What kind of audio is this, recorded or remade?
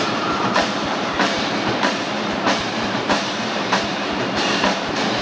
remade